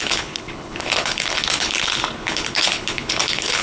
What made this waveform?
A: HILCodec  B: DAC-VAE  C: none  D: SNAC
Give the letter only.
A